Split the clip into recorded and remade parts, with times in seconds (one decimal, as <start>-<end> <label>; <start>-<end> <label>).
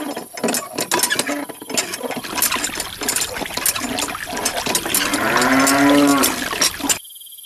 0.0-7.5 recorded